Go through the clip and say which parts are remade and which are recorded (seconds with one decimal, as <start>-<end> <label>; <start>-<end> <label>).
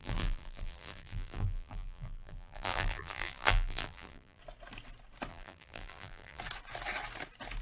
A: 0.0-4.4 remade; 4.4-5.3 recorded; 5.3-6.4 remade; 6.4-7.6 recorded